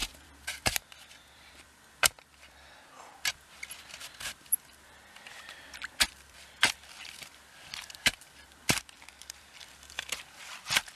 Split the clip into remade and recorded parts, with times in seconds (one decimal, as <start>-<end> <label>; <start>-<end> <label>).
0.0-11.0 remade